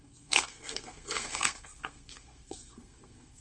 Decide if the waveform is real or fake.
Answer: fake